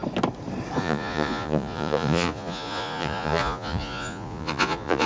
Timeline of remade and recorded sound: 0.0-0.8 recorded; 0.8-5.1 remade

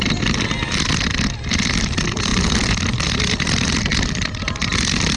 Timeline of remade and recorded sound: 0.0-5.2 recorded

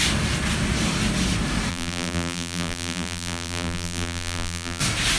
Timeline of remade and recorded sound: 0.0-1.7 recorded; 1.7-4.8 remade; 4.8-5.2 recorded